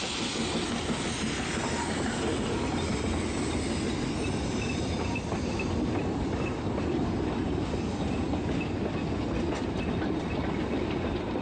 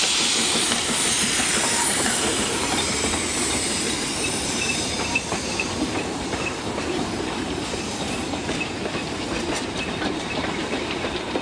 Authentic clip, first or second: first